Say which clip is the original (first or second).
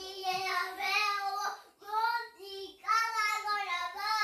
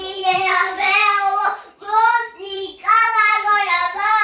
first